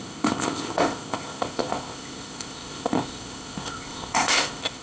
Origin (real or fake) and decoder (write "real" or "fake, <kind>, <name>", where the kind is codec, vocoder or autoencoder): fake, codec, ZipCodec